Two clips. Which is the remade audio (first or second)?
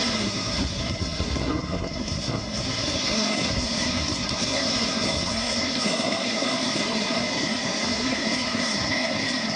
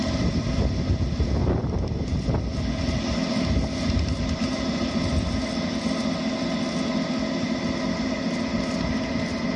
first